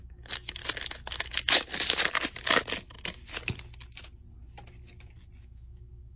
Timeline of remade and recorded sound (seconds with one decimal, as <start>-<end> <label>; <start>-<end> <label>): 0.0-0.6 remade; 0.6-1.2 recorded; 1.2-1.7 remade; 1.7-5.4 recorded; 5.4-6.2 remade